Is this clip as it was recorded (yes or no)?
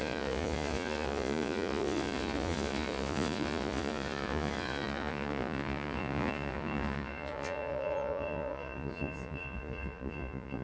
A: no